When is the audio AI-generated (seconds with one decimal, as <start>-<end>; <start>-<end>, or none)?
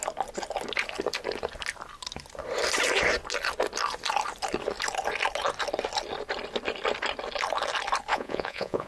8.1-8.9